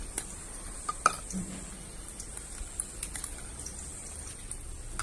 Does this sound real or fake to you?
real